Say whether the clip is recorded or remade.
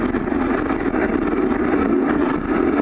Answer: recorded